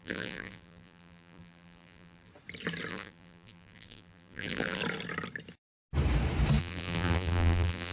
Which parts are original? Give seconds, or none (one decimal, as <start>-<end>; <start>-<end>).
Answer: 2.3-2.9; 4.8-6.6